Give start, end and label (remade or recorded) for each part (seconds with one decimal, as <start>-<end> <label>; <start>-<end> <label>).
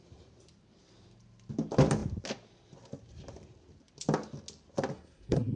0.0-4.9 recorded; 4.9-5.6 remade